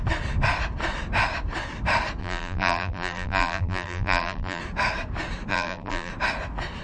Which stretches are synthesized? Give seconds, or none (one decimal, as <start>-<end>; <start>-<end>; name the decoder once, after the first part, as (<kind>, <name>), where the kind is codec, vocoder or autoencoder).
2.2-4.6 (vocoder, BigVGAN v2); 5.5-6.1